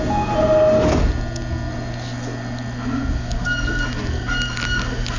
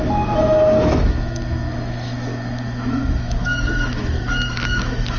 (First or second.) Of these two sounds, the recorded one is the first